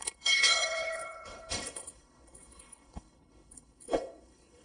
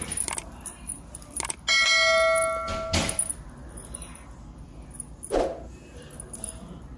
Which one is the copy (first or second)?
first